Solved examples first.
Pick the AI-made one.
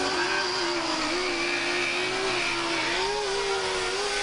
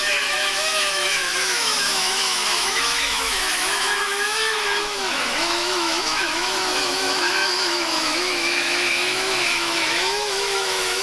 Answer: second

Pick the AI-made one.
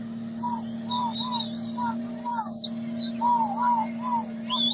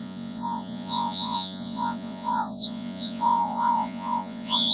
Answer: second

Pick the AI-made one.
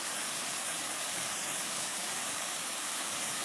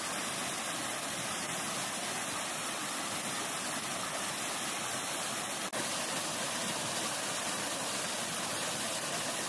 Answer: first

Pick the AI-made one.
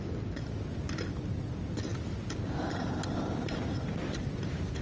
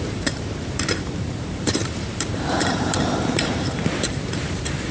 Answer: second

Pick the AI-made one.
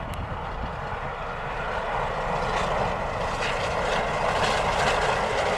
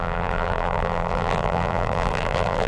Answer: second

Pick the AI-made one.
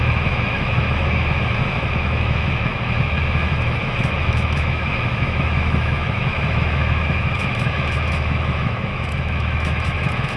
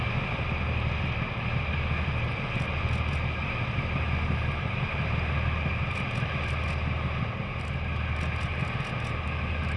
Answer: first